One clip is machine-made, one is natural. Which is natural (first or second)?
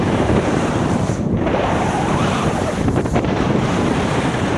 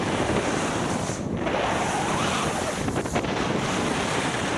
second